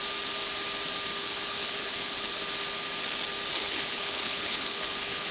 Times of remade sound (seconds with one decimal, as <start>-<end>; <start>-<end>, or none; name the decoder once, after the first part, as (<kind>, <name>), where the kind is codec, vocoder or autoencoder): 1.2-2.4 (codec, HILCodec); 3.5-5.3